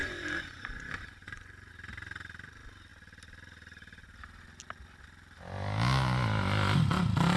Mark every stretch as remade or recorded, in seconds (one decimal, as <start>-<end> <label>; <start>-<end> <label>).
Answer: 0.0-1.7 remade; 1.7-7.4 recorded